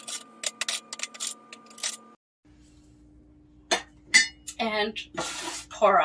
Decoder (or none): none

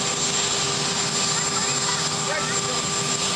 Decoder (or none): none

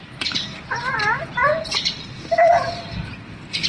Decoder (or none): vocoder, BigVGAN v2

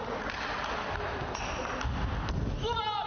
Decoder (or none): none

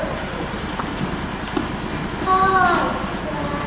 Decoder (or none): none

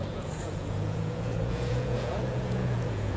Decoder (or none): vocoder, Vocos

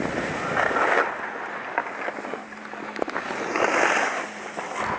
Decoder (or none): none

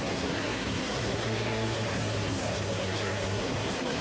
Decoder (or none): codec, SNAC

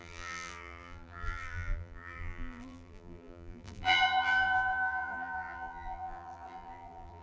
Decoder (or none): vocoder, BigVGAN v2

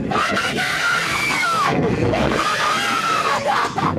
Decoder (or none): codec, SNAC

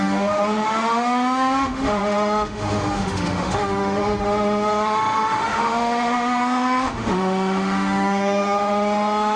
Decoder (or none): autoencoder, DAC-VAE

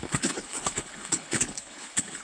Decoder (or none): codec, HILCodec